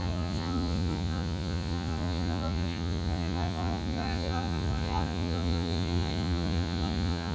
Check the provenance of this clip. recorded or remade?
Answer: remade